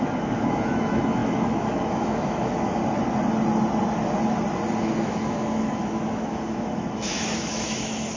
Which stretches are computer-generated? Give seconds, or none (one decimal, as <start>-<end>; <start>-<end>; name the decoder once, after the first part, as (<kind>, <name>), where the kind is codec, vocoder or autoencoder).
0.0-2.8 (autoencoder, DAC-VAE); 5.0-8.2